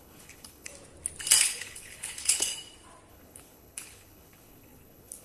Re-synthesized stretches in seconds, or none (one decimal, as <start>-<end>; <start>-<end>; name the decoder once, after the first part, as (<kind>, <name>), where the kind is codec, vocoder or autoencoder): 0.0-0.7 (codec, HILCodec); 1.4-2.5; 3.1-5.2